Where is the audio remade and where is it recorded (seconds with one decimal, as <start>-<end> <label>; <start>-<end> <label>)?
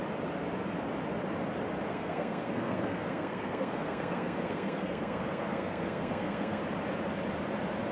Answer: 0.0-1.9 recorded; 1.9-6.6 remade; 6.6-7.9 recorded